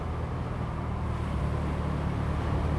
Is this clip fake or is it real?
real